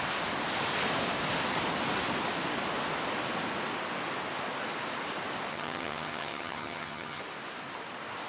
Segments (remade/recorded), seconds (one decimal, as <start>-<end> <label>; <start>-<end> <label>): 0.0-5.5 recorded; 5.5-7.2 remade; 7.2-8.3 recorded